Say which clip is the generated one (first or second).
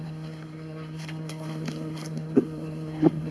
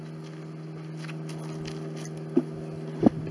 first